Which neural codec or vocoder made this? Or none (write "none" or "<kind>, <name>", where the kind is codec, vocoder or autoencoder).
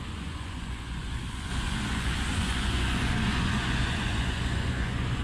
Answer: vocoder, Vocos